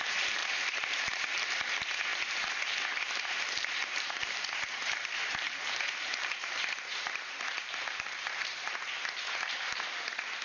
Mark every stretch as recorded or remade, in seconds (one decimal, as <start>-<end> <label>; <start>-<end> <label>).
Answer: 0.0-0.4 recorded; 0.4-1.4 remade; 1.4-2.1 recorded; 2.1-6.4 remade; 6.4-6.9 recorded; 6.9-8.9 remade; 8.9-10.4 recorded